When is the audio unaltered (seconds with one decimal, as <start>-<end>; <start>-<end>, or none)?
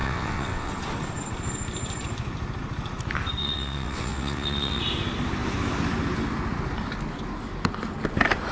0.7-3.4; 4.8-8.5